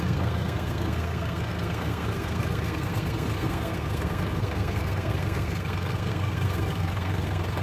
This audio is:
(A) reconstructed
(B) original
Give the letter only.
A